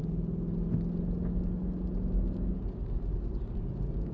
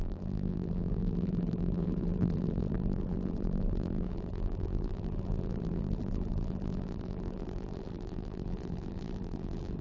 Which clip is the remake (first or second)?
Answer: second